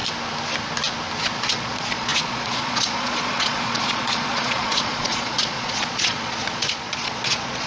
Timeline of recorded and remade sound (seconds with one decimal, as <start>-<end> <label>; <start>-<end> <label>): 0.0-1.2 recorded; 1.2-7.7 remade